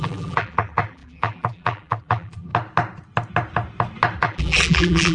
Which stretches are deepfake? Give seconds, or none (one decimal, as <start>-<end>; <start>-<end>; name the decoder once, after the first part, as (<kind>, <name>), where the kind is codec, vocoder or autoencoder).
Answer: 0.0-2.5 (vocoder, BigVGAN v2); 4.2-5.1